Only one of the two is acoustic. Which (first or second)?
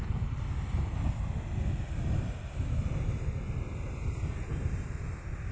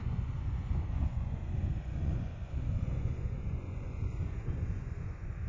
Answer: first